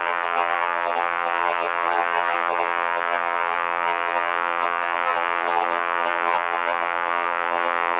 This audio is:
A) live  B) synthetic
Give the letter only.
B